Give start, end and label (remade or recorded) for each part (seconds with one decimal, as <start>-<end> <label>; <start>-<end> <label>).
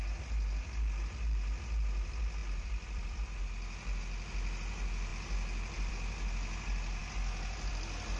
0.0-2.4 recorded; 2.4-3.4 remade; 3.4-8.2 recorded